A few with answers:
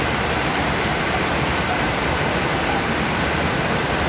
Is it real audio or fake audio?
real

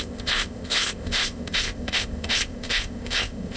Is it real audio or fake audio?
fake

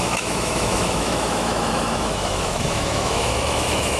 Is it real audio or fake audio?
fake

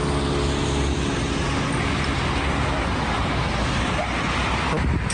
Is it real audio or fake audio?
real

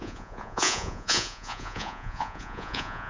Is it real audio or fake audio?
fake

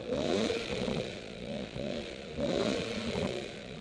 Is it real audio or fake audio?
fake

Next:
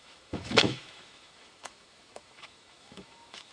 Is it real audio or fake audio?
fake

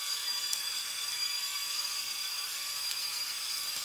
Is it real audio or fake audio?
fake